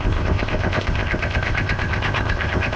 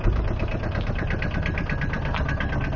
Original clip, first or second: second